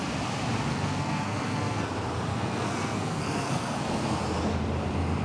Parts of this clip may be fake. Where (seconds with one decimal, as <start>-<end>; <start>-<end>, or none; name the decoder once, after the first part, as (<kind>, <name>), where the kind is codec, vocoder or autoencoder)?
0.7-1.9 (codec, SNAC); 2.3-4.2